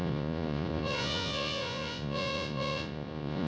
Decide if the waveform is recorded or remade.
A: remade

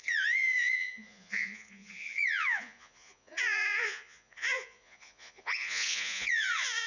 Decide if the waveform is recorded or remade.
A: remade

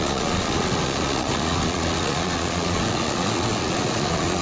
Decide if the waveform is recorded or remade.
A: remade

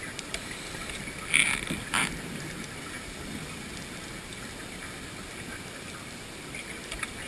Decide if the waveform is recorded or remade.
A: recorded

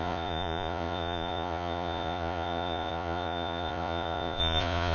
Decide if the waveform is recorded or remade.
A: remade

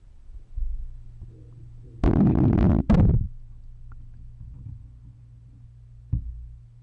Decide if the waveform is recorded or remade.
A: recorded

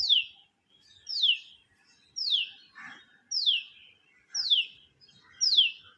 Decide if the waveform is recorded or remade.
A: recorded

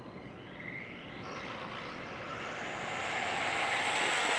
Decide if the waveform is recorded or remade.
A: recorded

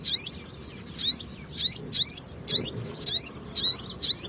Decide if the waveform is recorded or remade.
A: recorded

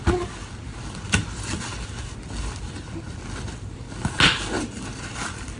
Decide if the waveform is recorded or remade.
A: recorded